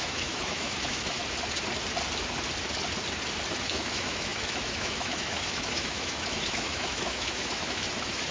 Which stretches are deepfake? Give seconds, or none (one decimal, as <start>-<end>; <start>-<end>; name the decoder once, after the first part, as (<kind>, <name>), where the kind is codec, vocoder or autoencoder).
0.0-1.2 (autoencoder, DAC-VAE); 3.6-8.3